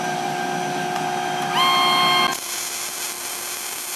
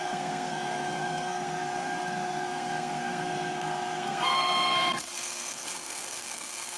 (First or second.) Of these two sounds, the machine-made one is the second